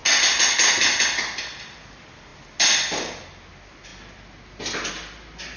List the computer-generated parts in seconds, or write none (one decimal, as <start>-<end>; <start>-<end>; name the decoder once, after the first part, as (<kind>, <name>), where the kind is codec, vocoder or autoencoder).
none